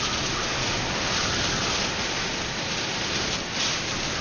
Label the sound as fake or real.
real